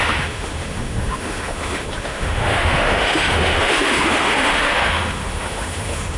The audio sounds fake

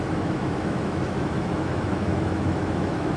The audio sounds fake